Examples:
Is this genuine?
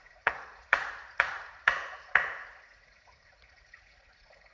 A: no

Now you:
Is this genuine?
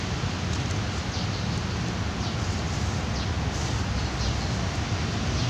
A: yes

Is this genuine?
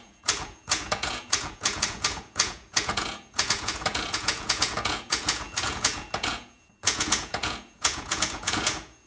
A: no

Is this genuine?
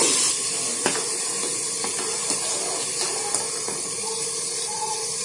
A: yes